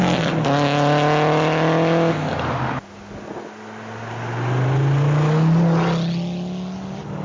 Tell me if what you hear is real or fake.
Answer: real